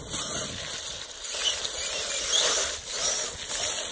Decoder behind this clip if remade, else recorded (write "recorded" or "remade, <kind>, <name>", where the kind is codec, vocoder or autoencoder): recorded